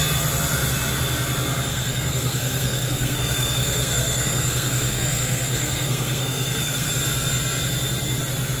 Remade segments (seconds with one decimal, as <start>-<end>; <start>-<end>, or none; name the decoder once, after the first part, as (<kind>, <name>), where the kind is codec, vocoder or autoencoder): 1.7-6.9 (codec, SNAC)